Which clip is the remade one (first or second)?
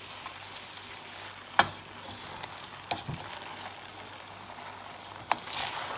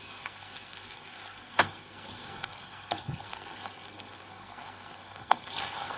second